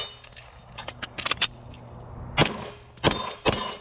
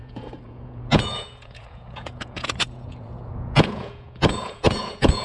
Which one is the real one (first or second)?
first